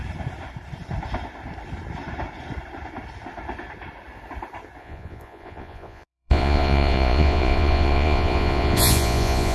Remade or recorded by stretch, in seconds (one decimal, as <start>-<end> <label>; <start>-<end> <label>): 0.0-4.8 recorded; 4.8-9.5 remade